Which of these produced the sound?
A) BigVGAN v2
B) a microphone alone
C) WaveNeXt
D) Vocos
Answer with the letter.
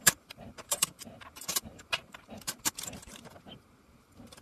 A